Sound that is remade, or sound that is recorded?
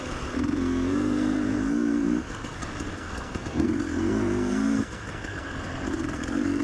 remade